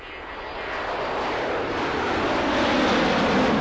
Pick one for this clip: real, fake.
real